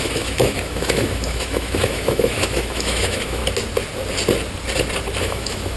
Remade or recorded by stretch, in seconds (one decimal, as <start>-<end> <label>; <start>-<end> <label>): 0.0-3.4 remade; 3.4-5.2 recorded; 5.2-5.8 remade